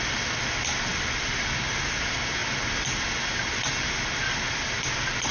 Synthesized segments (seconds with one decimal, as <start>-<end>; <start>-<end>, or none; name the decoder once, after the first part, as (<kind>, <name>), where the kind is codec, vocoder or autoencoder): none